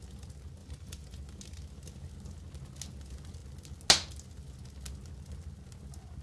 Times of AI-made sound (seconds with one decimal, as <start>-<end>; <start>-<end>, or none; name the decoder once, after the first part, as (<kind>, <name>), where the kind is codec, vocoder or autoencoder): 0.6-1.2 (vocoder, BigVGAN v2)